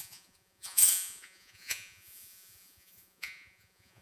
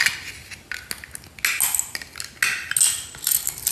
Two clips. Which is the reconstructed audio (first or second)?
first